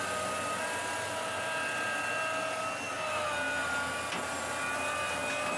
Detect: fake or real real